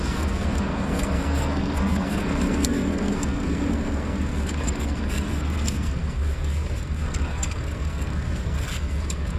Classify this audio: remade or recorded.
remade